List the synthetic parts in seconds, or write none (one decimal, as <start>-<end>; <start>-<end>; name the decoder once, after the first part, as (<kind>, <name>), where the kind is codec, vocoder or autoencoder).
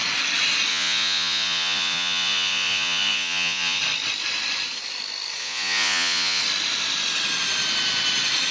0.7-3.8 (vocoder, Vocos); 5.4-6.4